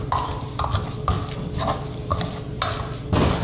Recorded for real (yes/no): yes